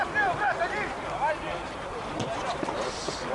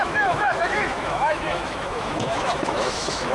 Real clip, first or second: first